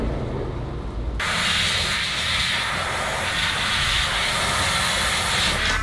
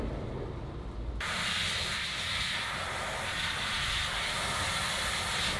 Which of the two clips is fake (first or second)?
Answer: second